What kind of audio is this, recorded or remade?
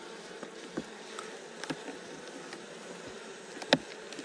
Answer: recorded